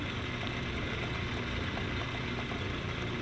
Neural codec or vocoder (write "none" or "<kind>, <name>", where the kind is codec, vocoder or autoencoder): none